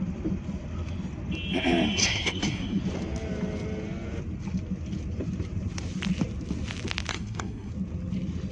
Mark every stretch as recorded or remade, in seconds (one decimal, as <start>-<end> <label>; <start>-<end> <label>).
0.0-2.0 recorded; 2.0-2.8 remade; 2.8-7.1 recorded; 7.1-7.7 remade; 7.7-8.5 recorded